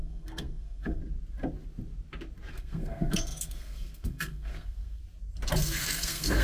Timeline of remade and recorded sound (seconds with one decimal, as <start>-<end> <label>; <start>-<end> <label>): 0.0-1.0 remade; 1.0-2.5 recorded; 2.5-5.0 remade; 5.0-5.6 recorded; 5.6-6.4 remade